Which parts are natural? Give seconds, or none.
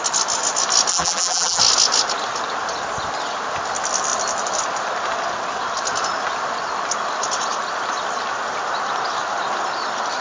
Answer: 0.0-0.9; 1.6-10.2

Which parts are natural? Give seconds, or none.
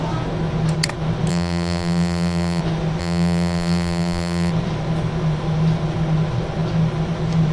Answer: 0.0-1.3; 2.6-3.0; 4.5-7.5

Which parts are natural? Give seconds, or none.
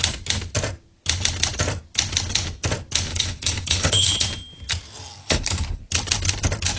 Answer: 0.0-3.1; 4.2-5.2; 5.8-6.8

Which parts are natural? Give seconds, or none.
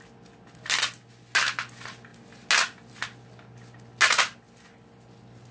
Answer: 0.0-5.5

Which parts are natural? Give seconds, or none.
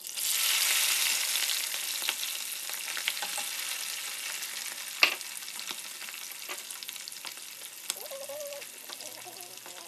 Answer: 0.0-9.9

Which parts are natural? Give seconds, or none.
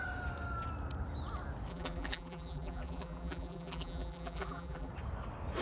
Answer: 0.0-1.7; 4.9-5.6